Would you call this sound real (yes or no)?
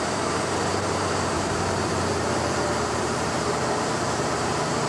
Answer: no